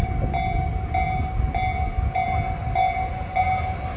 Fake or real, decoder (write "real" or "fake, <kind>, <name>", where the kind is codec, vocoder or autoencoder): real